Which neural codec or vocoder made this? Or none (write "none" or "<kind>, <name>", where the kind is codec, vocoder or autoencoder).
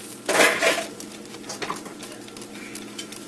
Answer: none